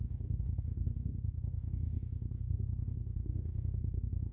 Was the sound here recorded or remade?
remade